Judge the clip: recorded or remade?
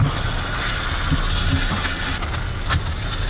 recorded